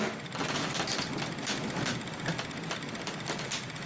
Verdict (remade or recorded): recorded